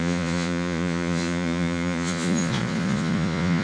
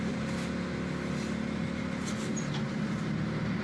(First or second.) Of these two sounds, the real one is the second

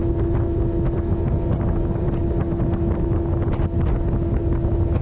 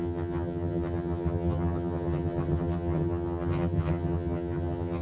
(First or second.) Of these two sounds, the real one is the first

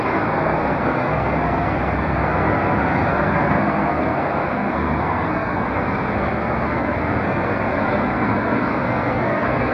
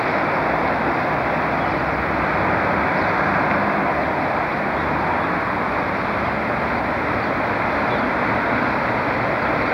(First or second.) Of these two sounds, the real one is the second